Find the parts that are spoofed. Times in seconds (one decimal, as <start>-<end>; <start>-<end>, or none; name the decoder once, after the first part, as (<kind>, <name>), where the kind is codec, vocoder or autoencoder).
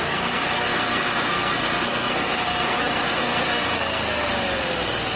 0.0-4.3 (codec, SNAC)